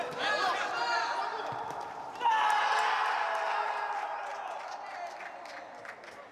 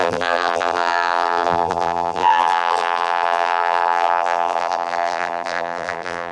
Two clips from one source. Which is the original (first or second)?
first